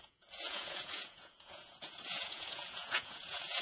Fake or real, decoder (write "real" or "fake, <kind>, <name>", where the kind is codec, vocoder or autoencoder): fake, vocoder, Vocos